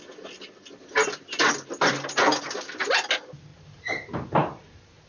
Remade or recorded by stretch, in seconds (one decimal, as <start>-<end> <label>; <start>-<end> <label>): 0.0-3.5 recorded; 3.5-5.1 remade